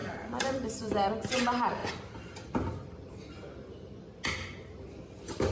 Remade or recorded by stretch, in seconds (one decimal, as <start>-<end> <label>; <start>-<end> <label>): 0.0-1.1 remade; 1.1-1.8 recorded; 1.8-3.1 remade; 3.1-5.5 recorded